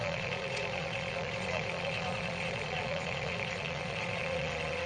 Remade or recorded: remade